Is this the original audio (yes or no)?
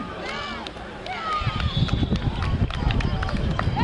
yes